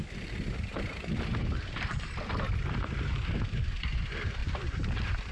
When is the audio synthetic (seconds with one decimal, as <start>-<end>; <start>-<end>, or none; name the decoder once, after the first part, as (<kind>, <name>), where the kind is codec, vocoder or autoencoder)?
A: 4.4-5.3 (vocoder, BigVGAN v2)